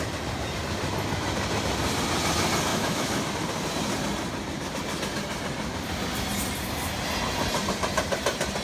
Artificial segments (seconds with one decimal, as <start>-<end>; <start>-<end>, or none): 2.7-3.2